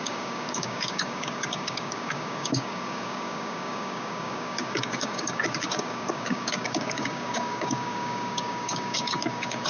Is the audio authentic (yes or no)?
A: no